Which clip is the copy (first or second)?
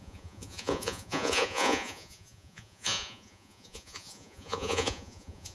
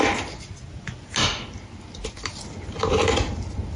first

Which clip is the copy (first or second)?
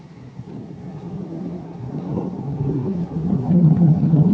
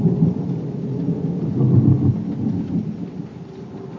first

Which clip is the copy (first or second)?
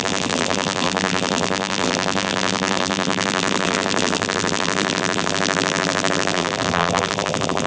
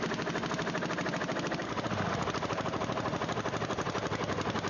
first